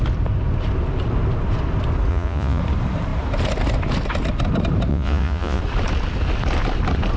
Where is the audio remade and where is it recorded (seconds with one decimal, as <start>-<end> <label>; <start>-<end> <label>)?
0.0-2.1 recorded; 2.1-2.6 remade; 2.6-4.9 recorded; 4.9-5.6 remade; 5.6-7.2 recorded